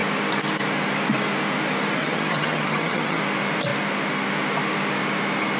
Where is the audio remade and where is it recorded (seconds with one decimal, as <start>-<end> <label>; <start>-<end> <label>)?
0.0-2.0 recorded; 2.0-3.2 remade; 3.2-5.6 recorded